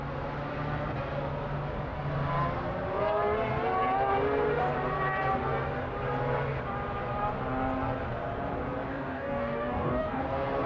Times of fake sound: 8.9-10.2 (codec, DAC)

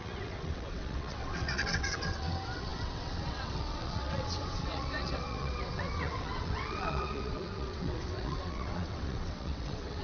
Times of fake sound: 0.0-10.0 (vocoder, WaveNeXt)

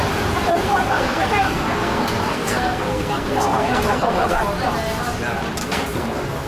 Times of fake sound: 0.5-4.4 (codec, SNAC); 5.6-6.5

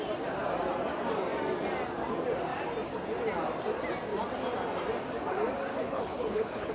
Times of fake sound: 5.7-6.7 (codec, HILCodec)

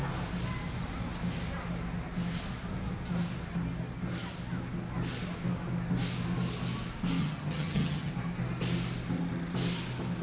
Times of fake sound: 7.2-8.1 (vocoder, HiFi-GAN)